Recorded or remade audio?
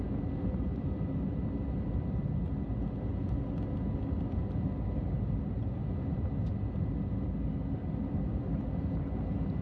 recorded